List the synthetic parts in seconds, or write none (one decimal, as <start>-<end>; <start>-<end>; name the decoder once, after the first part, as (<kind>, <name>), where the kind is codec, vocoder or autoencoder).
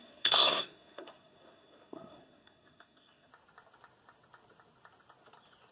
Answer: 0.0-3.3 (codec, SNAC)